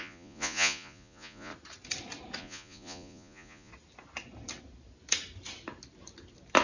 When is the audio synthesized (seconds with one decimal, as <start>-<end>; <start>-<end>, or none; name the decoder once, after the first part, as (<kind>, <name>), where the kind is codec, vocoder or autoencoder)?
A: 0.0-1.5 (vocoder, Vocos); 2.4-3.7